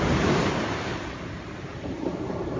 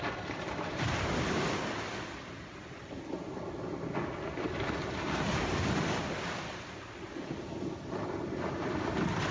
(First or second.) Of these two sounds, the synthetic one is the first